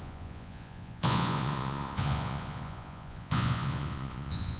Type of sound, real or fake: fake